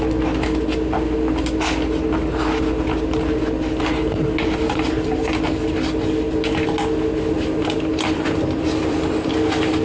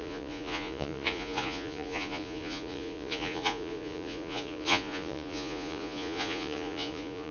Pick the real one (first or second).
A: first